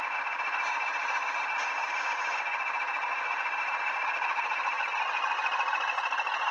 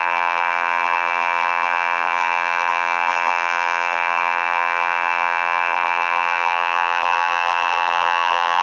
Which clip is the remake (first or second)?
second